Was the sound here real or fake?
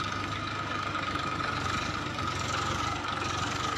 fake